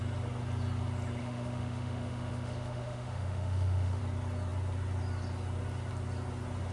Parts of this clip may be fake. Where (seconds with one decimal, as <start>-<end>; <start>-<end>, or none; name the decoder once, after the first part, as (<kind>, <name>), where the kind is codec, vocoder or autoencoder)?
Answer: 1.2-4.0 (autoencoder, DAC-VAE)